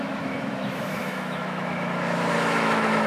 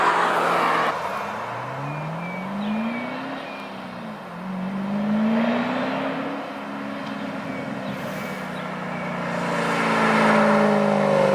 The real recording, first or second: second